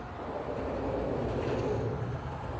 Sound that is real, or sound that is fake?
real